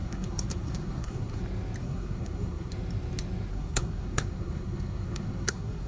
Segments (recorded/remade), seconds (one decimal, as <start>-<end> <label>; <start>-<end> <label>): 0.0-1.4 remade; 1.4-1.8 recorded; 1.8-2.7 remade; 2.7-3.5 recorded; 3.5-5.9 remade